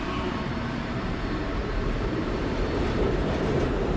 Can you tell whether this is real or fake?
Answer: fake